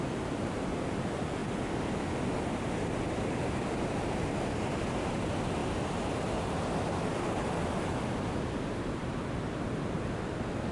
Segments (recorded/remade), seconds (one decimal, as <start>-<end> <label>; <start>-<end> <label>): 0.0-9.0 recorded; 9.0-9.7 remade; 9.7-10.7 recorded